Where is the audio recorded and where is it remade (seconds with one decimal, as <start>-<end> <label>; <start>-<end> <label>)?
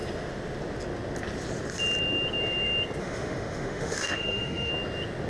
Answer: 0.0-3.0 recorded; 3.0-4.7 remade; 4.7-5.3 recorded